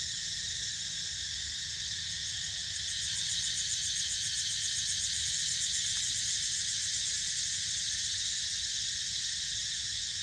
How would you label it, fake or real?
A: real